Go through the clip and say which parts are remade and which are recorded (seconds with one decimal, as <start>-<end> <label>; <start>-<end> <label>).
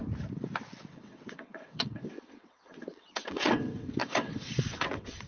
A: 0.0-0.9 recorded; 0.9-5.3 remade